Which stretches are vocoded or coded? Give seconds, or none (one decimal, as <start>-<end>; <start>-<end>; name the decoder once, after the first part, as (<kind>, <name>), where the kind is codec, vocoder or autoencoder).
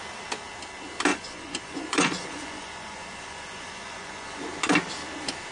1.1-4.4 (vocoder, Vocos)